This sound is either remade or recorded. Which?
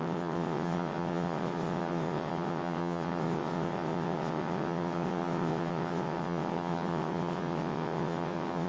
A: remade